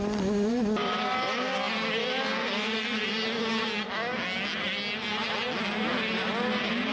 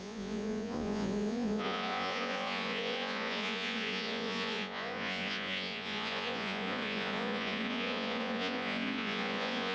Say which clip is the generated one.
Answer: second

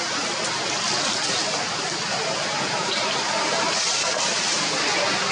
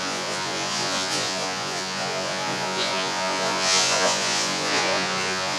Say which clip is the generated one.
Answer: second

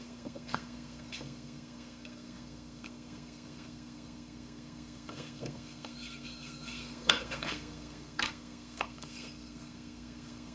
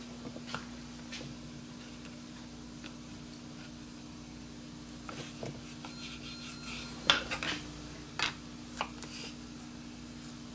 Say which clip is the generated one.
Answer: first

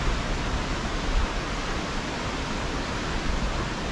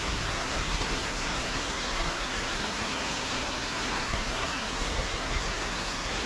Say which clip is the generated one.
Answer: second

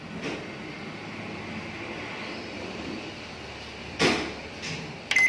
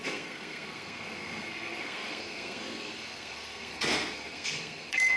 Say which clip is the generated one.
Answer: second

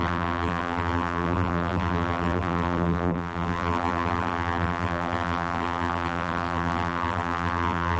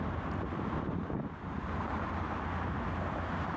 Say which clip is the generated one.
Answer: first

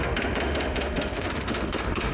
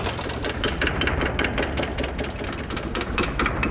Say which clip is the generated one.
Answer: first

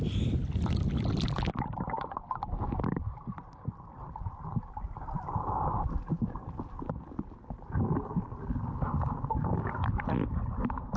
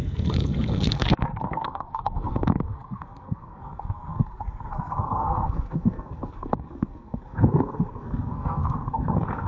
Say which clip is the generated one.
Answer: second